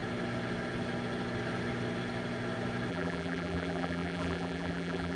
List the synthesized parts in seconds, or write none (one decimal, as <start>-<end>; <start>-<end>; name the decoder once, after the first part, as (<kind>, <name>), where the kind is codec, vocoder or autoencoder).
2.9-5.2 (vocoder, BigVGAN v2)